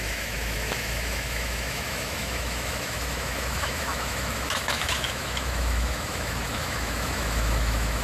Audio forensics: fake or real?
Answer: fake